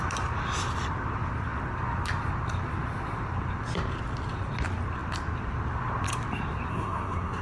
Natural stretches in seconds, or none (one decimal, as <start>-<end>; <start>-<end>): 0.0-6.7

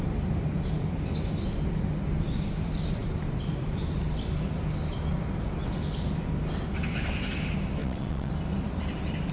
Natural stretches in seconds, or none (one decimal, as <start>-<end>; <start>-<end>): 0.0-7.8; 8.3-9.3

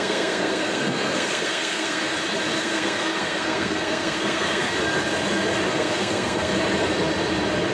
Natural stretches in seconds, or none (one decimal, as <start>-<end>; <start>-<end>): 2.0-2.6; 4.7-5.7; 6.5-7.7